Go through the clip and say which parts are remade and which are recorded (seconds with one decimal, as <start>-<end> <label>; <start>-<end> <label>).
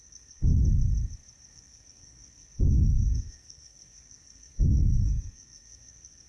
0.0-0.5 remade; 0.5-1.5 recorded; 1.5-6.3 remade